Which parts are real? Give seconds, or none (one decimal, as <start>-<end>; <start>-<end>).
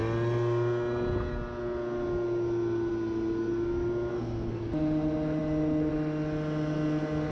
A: 0.0-4.1; 4.6-7.3